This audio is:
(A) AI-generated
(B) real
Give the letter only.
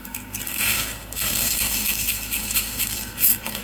A